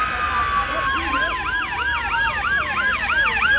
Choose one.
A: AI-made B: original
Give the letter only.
B